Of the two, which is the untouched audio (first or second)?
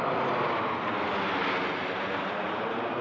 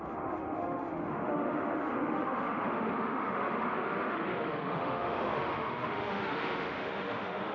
first